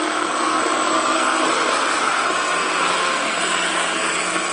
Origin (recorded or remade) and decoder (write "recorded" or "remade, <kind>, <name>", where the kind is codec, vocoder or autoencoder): remade, codec, SNAC